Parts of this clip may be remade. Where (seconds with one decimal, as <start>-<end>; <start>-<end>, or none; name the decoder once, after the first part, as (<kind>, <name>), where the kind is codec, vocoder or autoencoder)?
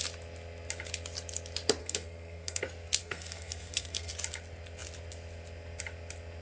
1.8-2.6 (codec, SNAC); 3.0-4.1